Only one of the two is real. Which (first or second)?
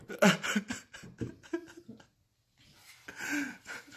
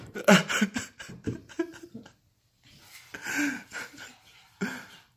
first